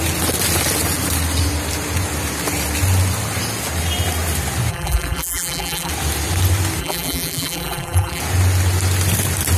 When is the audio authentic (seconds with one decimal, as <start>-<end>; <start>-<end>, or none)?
0.0-4.7; 5.9-6.8; 8.2-9.6